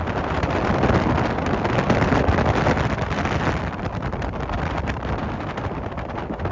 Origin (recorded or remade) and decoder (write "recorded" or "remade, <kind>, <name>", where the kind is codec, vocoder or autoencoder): recorded